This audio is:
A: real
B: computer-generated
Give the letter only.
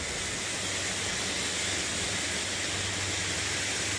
A